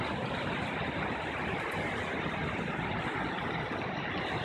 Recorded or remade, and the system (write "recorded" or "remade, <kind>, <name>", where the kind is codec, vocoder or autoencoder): recorded